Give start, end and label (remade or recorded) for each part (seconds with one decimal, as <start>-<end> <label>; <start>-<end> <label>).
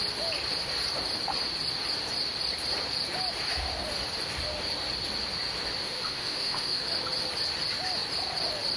0.0-5.8 recorded; 5.8-6.8 remade; 6.8-8.8 recorded